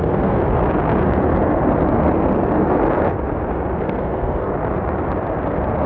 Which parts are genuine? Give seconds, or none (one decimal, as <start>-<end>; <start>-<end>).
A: 0.4-3.8; 4.5-5.9